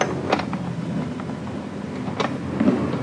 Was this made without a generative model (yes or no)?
yes